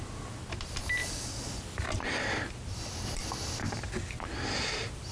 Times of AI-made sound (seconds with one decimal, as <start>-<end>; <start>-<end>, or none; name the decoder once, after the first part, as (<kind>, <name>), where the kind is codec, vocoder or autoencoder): none